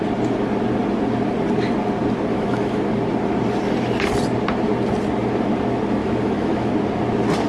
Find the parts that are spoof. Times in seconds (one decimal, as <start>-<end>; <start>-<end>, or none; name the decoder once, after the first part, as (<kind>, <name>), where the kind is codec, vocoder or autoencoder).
2.3-2.8 (autoencoder, DAC-VAE); 6.0-6.7